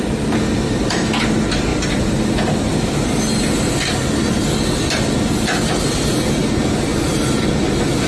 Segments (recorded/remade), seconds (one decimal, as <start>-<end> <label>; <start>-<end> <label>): 0.0-8.1 recorded